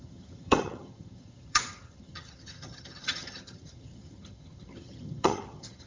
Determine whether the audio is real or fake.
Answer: fake